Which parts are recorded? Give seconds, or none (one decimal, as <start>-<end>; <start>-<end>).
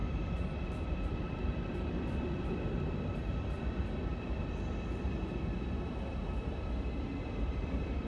0.0-0.8; 4.1-7.4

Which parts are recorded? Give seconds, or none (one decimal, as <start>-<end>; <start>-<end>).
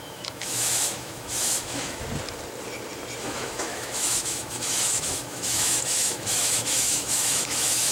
2.0-3.2